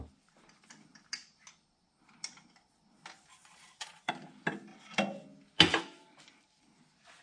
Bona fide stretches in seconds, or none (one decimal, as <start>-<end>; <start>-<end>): 0.0-3.3; 4.1-7.2